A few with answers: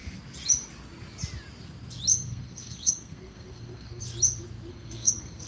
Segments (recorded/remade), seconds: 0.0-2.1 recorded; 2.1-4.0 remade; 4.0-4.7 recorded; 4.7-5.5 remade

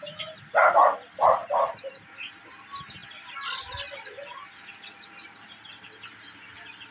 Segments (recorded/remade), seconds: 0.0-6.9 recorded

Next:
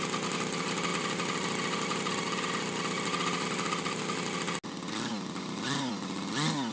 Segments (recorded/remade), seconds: 0.0-6.7 recorded

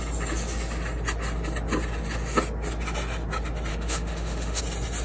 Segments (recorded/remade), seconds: 0.0-3.7 recorded; 3.7-4.6 remade; 4.6-5.0 recorded